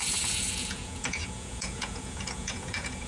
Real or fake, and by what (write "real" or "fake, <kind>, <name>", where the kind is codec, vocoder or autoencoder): fake, vocoder, Vocos